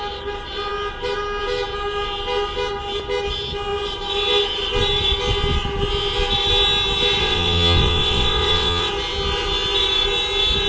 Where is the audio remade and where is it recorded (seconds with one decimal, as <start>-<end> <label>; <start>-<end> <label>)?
0.0-7.2 recorded; 7.2-8.9 remade; 8.9-10.7 recorded